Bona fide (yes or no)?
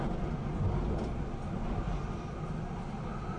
yes